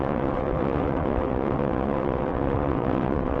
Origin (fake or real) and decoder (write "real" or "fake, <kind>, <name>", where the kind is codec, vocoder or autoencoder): fake, vocoder, WaveNeXt